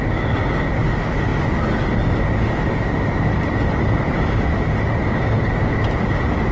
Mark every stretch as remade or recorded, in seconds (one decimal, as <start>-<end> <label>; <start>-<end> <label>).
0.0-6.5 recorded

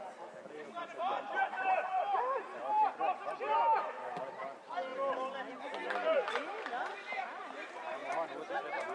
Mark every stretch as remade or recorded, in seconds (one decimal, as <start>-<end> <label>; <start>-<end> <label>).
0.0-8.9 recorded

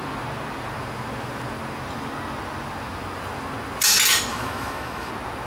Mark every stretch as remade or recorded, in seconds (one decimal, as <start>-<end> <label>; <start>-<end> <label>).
0.0-4.3 recorded; 4.3-5.1 remade; 5.1-5.5 recorded